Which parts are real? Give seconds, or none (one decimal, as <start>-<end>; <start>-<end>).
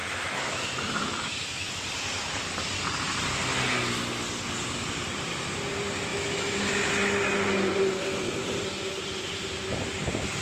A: 1.7-6.1; 6.6-10.4